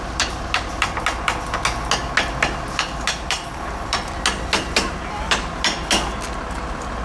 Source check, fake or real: real